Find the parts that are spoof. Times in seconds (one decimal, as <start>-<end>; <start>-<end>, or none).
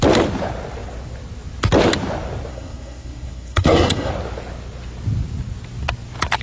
2.5-4.1